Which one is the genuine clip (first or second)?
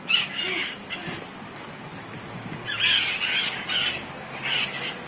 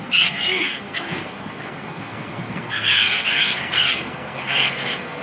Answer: first